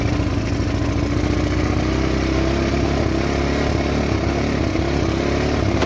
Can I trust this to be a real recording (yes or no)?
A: yes